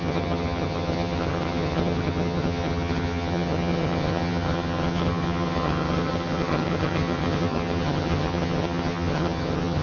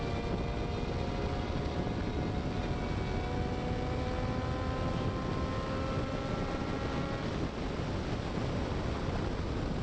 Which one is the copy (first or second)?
first